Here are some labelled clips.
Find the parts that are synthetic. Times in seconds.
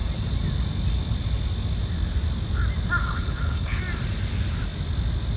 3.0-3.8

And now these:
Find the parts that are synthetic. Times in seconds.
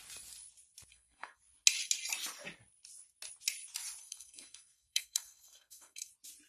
0.9-1.4; 4.0-6.1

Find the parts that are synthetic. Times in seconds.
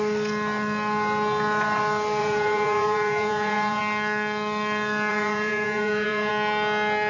2.2-3.8; 5.1-6.3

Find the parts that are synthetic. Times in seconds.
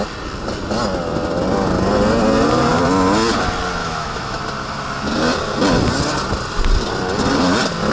3.8-4.4